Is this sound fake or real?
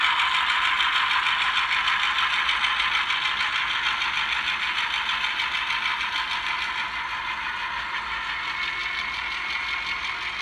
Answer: real